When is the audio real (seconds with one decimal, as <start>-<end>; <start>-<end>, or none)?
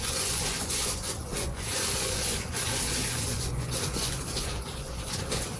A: none